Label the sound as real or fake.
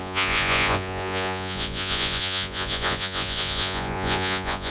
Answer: fake